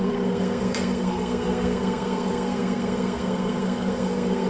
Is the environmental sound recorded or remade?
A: remade